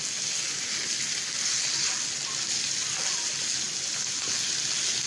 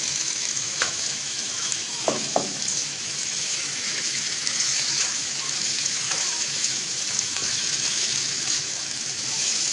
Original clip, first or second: first